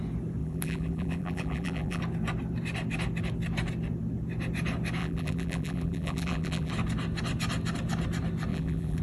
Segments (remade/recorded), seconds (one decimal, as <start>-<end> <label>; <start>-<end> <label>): 0.0-0.4 recorded; 0.4-2.0 remade; 2.0-5.0 recorded; 5.0-6.7 remade; 6.7-8.5 recorded; 8.5-9.0 remade

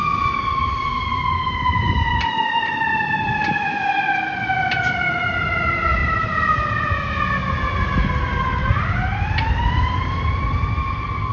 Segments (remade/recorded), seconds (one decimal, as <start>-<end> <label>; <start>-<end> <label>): 0.0-0.6 recorded; 0.6-2.7 remade; 2.7-6.0 recorded; 6.0-6.9 remade; 6.9-11.3 recorded

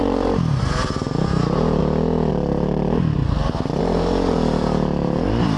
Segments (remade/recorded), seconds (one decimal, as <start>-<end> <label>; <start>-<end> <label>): 0.0-1.8 remade; 1.8-2.3 recorded; 2.3-3.2 remade; 3.2-3.8 recorded; 3.8-5.6 remade

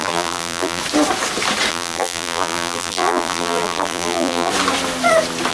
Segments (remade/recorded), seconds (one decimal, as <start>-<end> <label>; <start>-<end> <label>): 0.0-0.8 remade; 0.8-1.7 recorded; 1.7-4.5 remade; 4.5-5.5 recorded

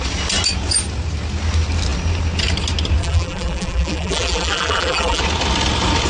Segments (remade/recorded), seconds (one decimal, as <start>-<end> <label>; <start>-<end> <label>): 0.0-3.0 recorded; 3.0-5.2 remade; 5.2-6.1 recorded

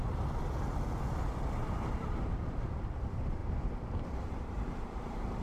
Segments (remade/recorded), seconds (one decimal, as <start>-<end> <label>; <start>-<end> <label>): 0.0-1.6 recorded; 1.6-3.4 remade; 3.4-4.3 recorded; 4.3-5.4 remade